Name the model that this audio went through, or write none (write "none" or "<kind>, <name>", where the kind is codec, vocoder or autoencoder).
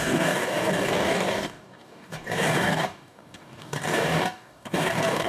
codec, DAC